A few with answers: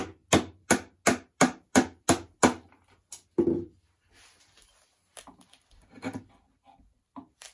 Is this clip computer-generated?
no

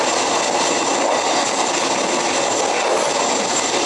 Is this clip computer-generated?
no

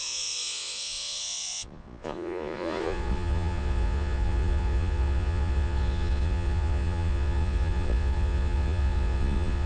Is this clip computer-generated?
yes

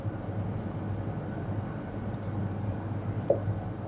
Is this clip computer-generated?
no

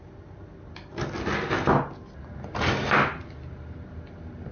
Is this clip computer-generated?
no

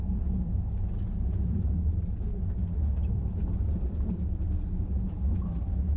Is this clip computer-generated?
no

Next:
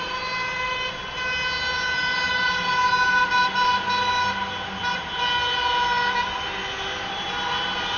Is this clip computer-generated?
no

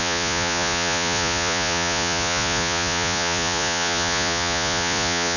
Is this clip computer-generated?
yes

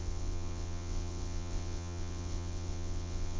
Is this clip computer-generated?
yes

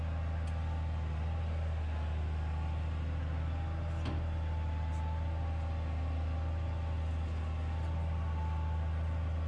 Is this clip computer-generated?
no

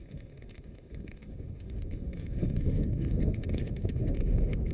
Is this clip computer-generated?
yes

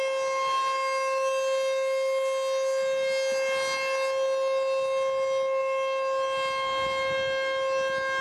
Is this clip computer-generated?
no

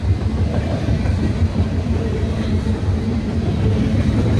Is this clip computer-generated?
yes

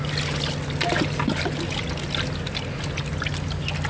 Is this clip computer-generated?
no